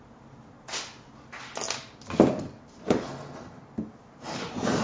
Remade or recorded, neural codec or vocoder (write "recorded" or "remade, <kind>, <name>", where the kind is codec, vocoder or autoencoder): recorded